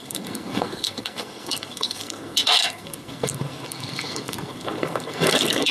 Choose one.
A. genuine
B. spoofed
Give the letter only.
B